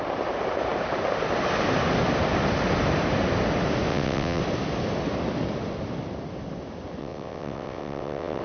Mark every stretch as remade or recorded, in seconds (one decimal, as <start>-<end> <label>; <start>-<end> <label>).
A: 0.0-3.9 recorded; 3.9-4.4 remade; 4.4-7.0 recorded; 7.0-8.4 remade